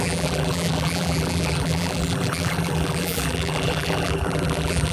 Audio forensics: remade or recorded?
remade